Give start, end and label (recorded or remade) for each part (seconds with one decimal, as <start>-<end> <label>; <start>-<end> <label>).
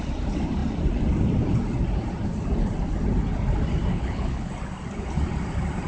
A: 0.0-3.9 recorded; 3.9-4.5 remade; 4.5-5.9 recorded